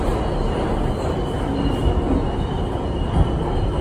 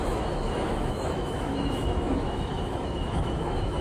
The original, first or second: first